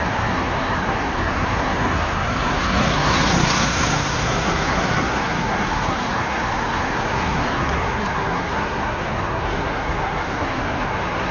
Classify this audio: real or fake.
fake